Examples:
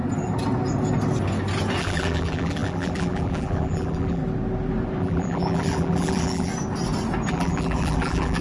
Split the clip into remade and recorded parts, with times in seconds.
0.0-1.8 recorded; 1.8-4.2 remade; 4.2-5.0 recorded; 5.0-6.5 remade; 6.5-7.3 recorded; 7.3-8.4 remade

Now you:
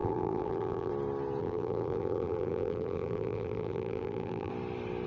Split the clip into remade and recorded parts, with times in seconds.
0.0-0.9 remade; 0.9-1.4 recorded; 1.4-4.5 remade; 4.5-5.1 recorded

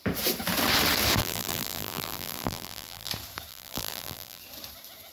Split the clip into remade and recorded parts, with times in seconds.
0.0-1.2 recorded; 1.2-3.1 remade; 3.1-3.5 recorded; 3.5-4.4 remade; 4.4-5.1 recorded